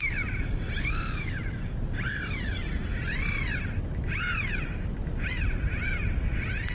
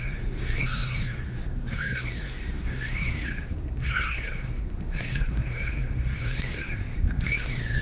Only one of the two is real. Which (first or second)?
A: first